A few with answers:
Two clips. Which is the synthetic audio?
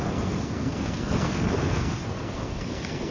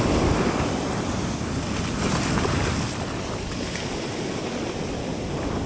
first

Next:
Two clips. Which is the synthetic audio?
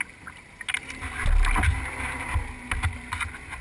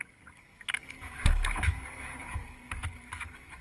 second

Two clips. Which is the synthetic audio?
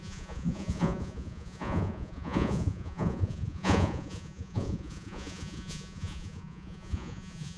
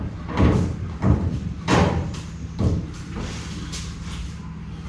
first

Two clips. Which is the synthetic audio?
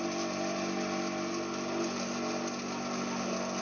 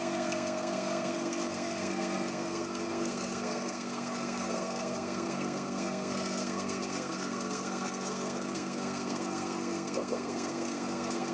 second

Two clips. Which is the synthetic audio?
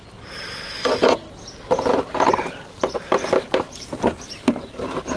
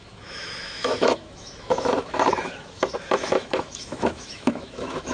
second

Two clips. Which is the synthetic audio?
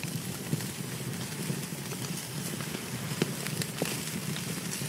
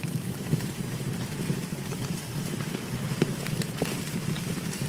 second